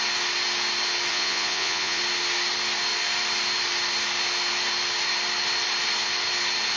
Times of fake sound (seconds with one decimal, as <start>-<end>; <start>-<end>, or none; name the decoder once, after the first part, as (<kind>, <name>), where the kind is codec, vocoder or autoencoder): 1.1-2.0 (vocoder, Vocos)

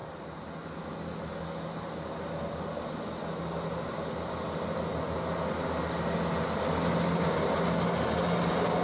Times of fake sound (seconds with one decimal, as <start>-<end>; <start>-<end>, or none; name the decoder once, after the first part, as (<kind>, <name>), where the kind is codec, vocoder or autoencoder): none

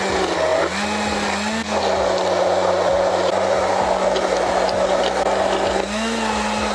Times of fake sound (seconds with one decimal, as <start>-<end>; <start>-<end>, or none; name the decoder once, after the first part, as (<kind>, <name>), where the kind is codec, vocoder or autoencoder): none

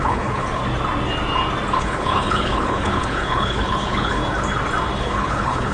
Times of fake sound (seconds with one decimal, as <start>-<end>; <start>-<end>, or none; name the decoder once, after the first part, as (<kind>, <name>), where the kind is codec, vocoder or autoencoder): 0.0-0.6 (codec, HILCodec); 1.8-4.2; 5.0-5.7